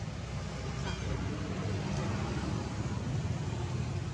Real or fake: real